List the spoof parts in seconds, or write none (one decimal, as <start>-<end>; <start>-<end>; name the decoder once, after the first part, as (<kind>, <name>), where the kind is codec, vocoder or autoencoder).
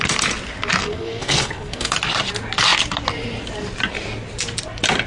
0.8-1.9 (codec, SNAC)